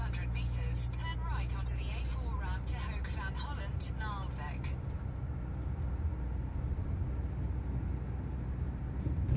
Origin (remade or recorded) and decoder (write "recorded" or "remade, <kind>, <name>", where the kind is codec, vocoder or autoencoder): recorded